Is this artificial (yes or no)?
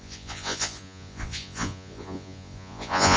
yes